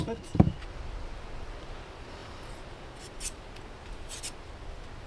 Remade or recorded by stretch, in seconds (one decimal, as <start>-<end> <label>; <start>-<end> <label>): 0.0-5.1 recorded